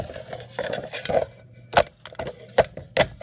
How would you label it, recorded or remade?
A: recorded